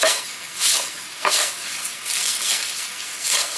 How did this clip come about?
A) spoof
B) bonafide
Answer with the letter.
A